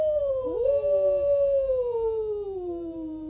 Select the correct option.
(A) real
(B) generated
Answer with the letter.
A